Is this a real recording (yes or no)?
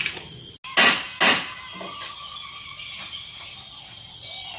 yes